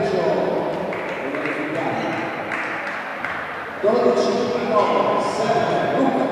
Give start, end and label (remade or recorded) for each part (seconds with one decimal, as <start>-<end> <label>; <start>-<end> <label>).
0.0-6.3 recorded